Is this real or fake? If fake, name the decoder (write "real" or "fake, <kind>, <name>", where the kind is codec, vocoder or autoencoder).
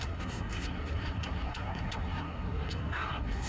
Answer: fake, codec, SNAC